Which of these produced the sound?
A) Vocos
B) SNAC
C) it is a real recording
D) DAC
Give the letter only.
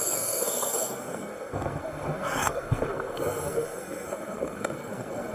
B